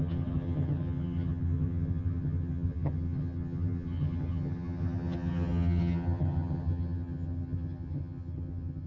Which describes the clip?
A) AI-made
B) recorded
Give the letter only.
A